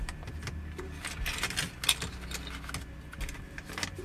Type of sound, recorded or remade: recorded